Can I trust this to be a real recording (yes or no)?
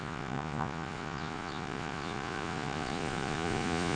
no